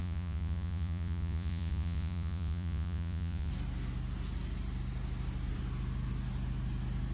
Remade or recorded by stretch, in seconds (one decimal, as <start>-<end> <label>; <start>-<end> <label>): 0.0-3.5 remade; 3.5-7.1 recorded